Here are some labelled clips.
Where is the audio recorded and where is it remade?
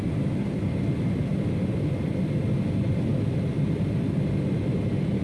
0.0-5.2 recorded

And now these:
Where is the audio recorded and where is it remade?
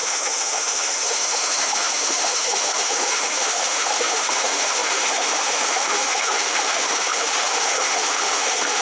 0.0-8.8 remade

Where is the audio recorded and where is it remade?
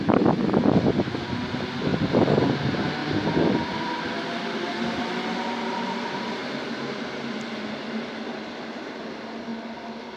0.0-3.0 remade; 3.0-3.6 recorded; 3.6-6.4 remade; 6.4-8.2 recorded; 8.2-9.5 remade; 9.5-10.2 recorded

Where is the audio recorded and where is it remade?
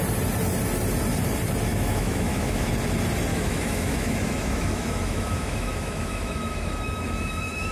0.0-1.7 recorded; 1.7-2.7 remade; 2.7-3.3 recorded; 3.3-7.7 remade